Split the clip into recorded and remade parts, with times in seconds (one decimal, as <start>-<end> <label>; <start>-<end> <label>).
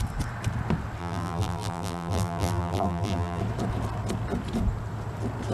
0.0-1.0 recorded; 1.0-3.4 remade; 3.4-5.5 recorded